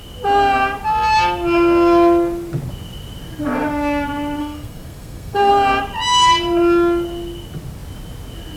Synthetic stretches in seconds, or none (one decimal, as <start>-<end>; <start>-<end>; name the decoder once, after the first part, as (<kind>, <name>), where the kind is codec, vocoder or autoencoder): 4.4-5.5 (codec, SNAC)